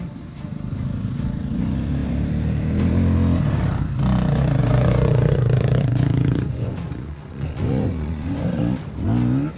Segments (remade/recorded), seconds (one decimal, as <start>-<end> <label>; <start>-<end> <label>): 0.0-4.6 recorded; 4.6-8.6 remade; 8.6-9.6 recorded